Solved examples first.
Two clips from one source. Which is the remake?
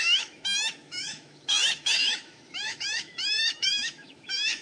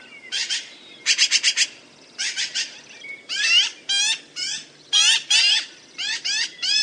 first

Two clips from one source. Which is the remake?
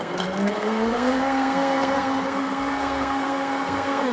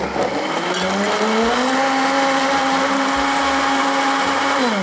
first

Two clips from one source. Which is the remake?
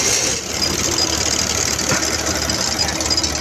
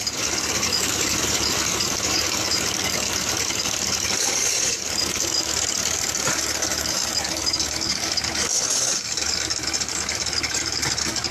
second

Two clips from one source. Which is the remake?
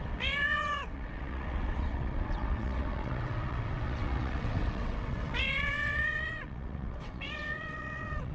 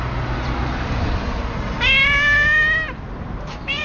first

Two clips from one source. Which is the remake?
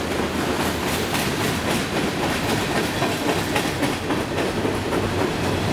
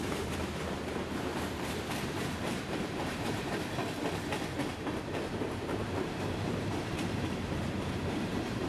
second